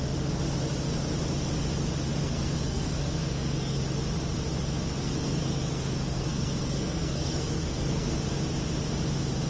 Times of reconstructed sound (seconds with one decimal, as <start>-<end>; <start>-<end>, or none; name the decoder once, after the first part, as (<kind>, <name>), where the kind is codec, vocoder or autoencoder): 2.2-3.8 (codec, SNAC); 5.0-8.2